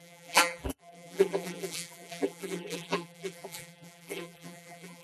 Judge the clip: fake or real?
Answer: fake